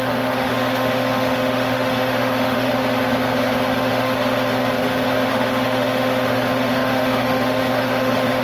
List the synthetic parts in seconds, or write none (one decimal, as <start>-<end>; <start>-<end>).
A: 0.0-2.8; 3.7-4.6; 5.3-8.4